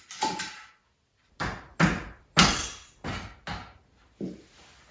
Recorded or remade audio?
recorded